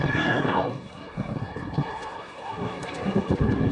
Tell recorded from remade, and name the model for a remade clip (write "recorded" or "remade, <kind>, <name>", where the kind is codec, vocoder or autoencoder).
remade, codec, SNAC